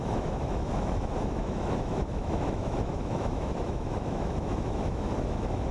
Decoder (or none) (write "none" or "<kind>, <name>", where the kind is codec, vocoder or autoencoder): autoencoder, DAC-VAE